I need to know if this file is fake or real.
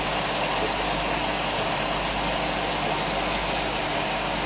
real